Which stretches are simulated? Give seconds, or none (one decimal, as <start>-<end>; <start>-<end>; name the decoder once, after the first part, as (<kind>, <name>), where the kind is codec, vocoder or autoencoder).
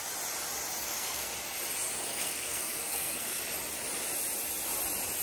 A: 0.8-1.3 (codec, SNAC); 2.1-3.4